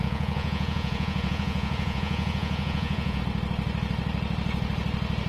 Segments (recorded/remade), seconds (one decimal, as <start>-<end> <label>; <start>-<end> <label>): 0.0-3.2 remade; 3.2-5.3 recorded

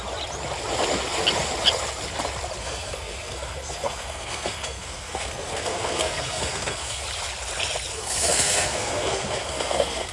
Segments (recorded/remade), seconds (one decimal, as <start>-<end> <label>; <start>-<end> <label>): 0.0-2.6 recorded; 2.6-7.0 remade; 7.0-7.9 recorded; 7.9-10.1 remade

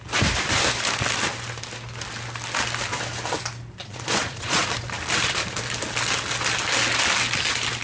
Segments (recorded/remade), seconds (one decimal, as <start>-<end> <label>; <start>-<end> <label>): 0.0-3.8 recorded; 3.8-4.6 remade; 4.6-7.8 recorded

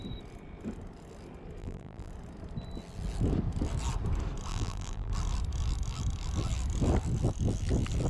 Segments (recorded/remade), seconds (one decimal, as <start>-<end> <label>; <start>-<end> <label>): 0.0-1.6 recorded; 1.6-2.1 remade; 2.1-4.5 recorded; 4.5-5.1 remade; 5.1-8.1 recorded

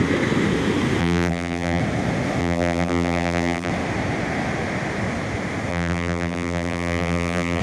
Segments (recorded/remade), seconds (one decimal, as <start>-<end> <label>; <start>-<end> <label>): 0.0-1.0 recorded; 1.0-1.8 remade; 1.8-2.4 recorded; 2.4-3.7 remade; 3.7-5.7 recorded; 5.7-7.6 remade

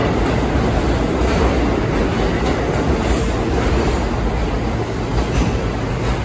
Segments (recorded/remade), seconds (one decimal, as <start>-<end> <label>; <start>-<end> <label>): 0.0-6.2 recorded

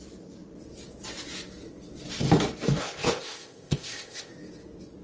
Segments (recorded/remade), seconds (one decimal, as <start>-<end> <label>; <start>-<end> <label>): 0.0-2.8 recorded; 2.8-4.3 remade; 4.3-5.0 recorded